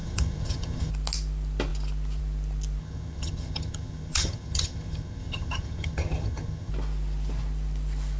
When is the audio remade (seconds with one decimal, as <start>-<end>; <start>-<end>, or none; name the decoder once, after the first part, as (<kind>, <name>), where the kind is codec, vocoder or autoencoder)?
0.0-0.9 (vocoder, HiFi-GAN); 2.8-6.7